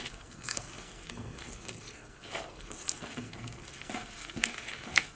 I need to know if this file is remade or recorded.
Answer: remade